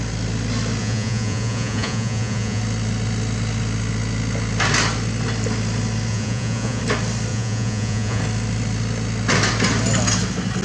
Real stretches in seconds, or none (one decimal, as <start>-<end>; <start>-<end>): 0.0-0.8; 2.6-6.1; 6.8-7.3; 8.2-10.6